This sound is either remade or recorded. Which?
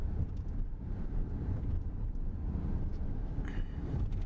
remade